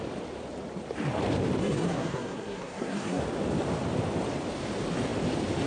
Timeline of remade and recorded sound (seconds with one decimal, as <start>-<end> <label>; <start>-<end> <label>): 0.0-1.6 recorded; 1.6-3.2 remade; 3.2-5.7 recorded